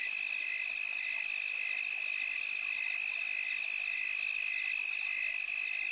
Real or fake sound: real